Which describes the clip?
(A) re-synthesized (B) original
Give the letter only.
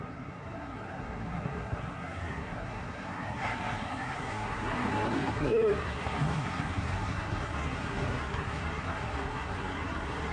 A